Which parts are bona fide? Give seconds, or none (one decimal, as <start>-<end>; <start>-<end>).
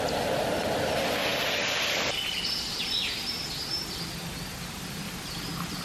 0.0-5.8